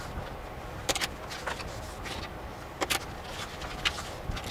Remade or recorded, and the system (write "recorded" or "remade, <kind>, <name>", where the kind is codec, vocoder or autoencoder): recorded